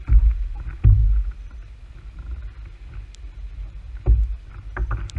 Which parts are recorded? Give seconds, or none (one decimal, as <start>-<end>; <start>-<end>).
0.0-5.2